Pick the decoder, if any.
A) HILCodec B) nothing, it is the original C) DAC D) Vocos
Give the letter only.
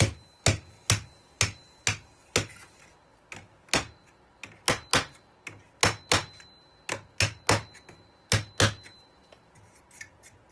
B